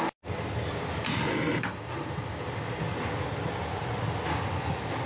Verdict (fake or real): real